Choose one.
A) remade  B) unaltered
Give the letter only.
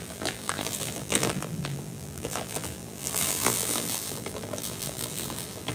A